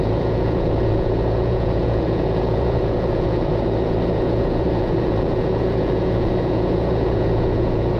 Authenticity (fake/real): fake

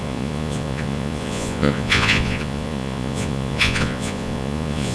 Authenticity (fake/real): fake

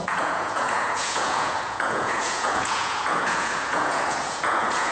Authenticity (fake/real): fake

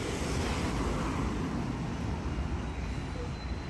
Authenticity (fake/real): real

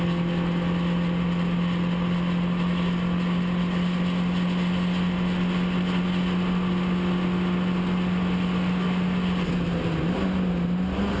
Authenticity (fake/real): real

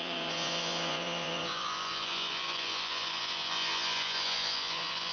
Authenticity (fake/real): fake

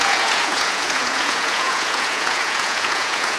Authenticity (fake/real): fake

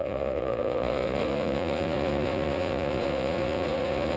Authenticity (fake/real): fake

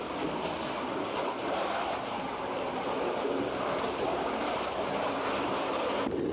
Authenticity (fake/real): real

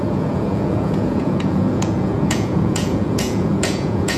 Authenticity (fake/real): fake